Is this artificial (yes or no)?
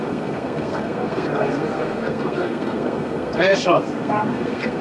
yes